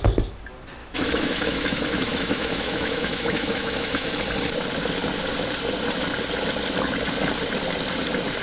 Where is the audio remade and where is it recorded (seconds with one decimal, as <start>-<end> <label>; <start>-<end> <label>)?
0.0-0.8 recorded; 0.8-4.2 remade; 4.2-8.4 recorded